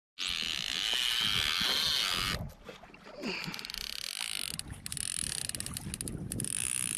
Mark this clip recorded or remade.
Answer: recorded